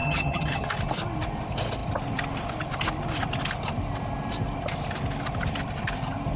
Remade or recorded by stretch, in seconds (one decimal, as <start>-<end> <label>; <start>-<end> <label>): 0.0-0.7 remade; 0.7-6.4 recorded